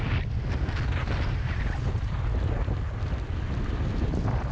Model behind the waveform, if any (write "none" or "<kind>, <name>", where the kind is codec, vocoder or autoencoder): none